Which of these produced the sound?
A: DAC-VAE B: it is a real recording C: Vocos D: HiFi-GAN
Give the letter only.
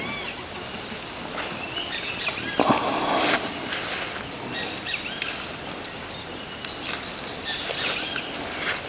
B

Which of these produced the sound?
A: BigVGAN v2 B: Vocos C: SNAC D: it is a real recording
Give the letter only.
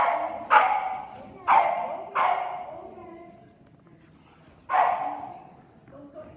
D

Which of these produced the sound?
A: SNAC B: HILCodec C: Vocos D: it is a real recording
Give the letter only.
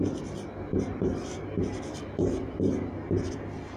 D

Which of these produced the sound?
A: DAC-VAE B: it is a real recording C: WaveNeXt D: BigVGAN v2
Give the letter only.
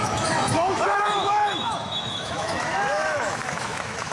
A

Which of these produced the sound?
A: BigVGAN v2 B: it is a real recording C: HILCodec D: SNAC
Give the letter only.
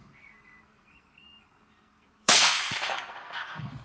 D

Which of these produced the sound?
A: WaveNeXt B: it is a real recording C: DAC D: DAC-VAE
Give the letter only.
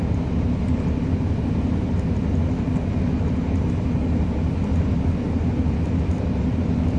B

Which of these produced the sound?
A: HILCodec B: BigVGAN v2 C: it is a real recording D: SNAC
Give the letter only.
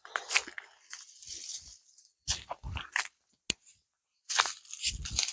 C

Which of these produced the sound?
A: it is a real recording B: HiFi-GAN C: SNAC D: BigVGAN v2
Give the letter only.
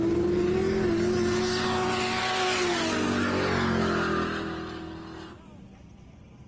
A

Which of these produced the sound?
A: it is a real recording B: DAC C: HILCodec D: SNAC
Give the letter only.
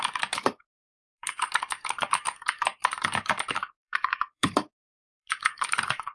B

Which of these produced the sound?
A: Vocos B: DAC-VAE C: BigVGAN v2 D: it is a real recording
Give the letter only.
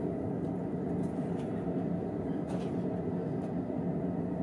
D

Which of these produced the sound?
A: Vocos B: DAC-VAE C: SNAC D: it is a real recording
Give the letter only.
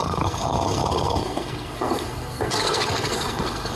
C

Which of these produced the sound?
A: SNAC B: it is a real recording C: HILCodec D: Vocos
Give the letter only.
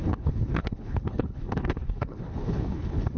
C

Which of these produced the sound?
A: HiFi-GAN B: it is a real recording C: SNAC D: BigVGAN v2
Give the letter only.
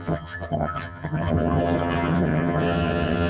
A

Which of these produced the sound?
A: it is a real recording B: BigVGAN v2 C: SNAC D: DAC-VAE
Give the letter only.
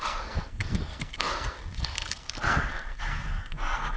C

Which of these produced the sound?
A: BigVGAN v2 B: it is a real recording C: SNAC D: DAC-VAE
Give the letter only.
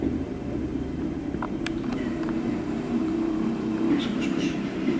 A